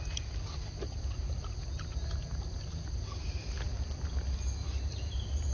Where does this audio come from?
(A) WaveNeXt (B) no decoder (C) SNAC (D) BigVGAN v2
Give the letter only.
B